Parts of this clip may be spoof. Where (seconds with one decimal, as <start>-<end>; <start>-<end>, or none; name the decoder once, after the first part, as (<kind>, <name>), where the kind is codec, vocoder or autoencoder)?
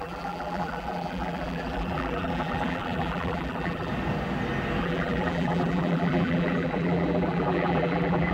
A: 0.0-3.9 (vocoder, BigVGAN v2); 4.8-8.3